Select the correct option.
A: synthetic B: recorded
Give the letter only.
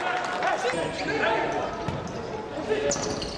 B